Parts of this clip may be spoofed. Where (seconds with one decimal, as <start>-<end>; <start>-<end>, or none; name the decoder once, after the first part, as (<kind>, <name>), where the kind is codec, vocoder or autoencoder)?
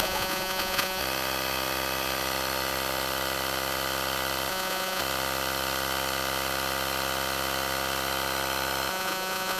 0.0-1.0 (vocoder, Vocos); 4.5-5.0; 8.9-9.6